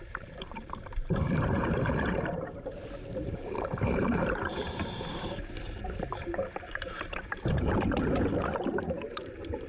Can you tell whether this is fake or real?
fake